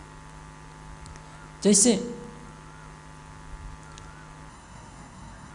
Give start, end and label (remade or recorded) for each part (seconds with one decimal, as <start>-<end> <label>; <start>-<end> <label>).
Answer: 0.0-4.5 recorded; 4.5-5.5 remade